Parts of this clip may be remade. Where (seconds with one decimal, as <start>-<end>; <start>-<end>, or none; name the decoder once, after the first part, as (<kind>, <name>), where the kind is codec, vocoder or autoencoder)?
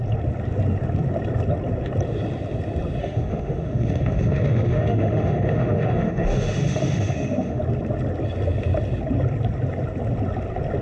3.0-7.6 (autoencoder, DAC-VAE)